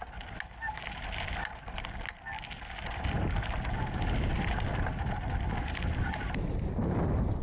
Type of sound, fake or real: real